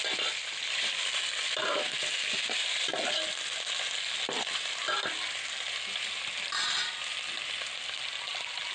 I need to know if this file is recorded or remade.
recorded